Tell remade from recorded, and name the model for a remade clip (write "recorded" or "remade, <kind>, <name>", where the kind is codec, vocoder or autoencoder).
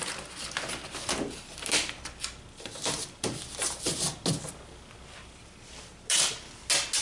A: recorded